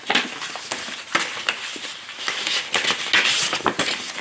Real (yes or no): yes